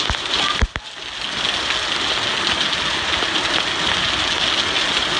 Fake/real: real